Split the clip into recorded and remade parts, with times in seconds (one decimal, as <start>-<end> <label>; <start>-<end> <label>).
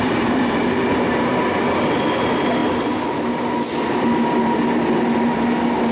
0.0-5.9 recorded